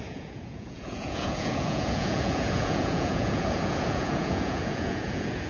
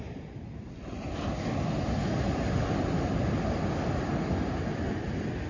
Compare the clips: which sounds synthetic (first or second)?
first